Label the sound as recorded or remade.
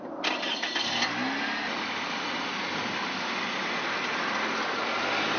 recorded